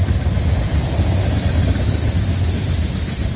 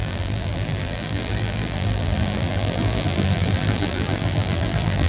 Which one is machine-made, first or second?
second